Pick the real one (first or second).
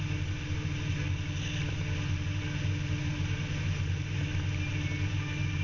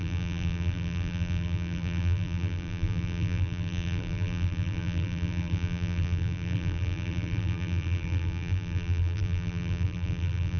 first